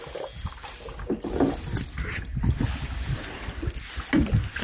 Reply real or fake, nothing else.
real